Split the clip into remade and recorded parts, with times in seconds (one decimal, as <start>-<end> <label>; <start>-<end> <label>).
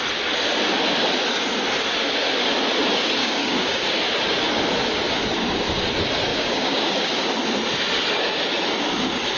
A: 0.0-3.2 recorded; 3.2-3.9 remade; 3.9-6.3 recorded; 6.3-7.3 remade; 7.3-9.4 recorded